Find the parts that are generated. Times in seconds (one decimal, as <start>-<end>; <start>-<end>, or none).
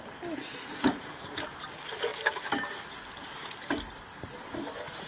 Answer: none